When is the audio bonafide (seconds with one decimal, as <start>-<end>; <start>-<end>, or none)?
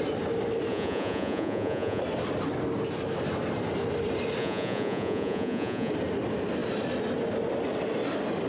0.0-0.7; 2.0-4.4; 5.9-8.5